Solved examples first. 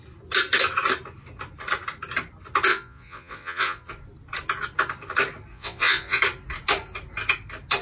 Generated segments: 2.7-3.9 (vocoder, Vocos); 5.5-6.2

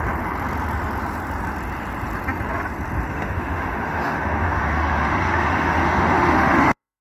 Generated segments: 3.1-7.0 (autoencoder, DAC-VAE)

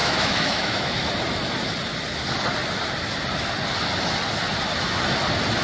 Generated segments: 0.0-1.1 (autoencoder, DAC-VAE)

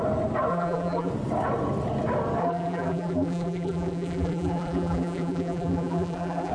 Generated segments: 0.5-1.1 (vocoder, BigVGAN v2); 2.4-6.5

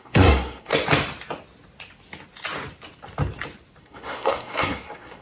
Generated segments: 0.0-0.7 (codec, SNAC); 3.8-5.2

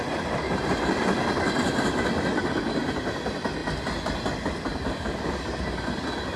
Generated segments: none

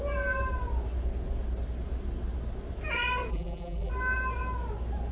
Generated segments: 3.3-3.9 (vocoder, BigVGAN v2)